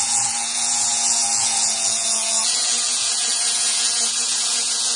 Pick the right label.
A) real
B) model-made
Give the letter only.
B